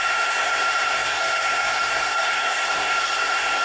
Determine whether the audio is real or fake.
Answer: fake